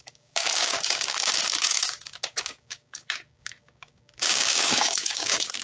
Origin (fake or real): fake